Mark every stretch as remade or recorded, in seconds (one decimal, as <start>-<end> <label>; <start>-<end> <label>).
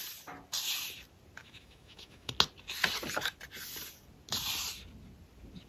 0.0-1.4 recorded; 1.4-2.3 remade; 2.3-5.7 recorded